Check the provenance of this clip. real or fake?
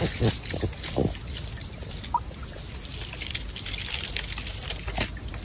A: real